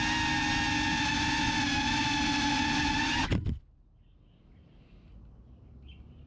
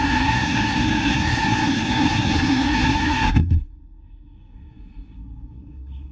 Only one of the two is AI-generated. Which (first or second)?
second